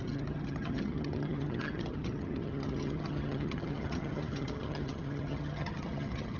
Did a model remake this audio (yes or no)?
yes